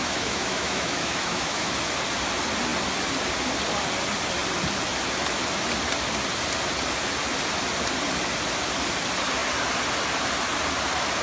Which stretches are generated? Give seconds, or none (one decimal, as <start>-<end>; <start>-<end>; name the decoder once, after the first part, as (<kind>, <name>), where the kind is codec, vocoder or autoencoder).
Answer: 0.0-1.7 (autoencoder, DAC-VAE)